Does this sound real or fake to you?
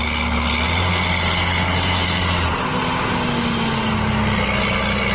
real